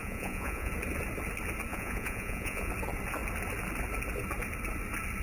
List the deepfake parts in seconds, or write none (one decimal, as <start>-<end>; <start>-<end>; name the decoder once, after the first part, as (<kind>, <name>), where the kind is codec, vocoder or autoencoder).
0.0-0.7 (vocoder, Vocos); 1.7-2.7